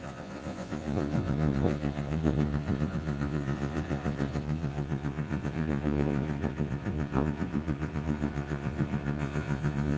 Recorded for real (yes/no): no